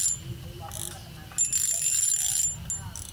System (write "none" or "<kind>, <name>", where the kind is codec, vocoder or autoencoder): none